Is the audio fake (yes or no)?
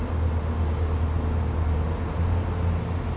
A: no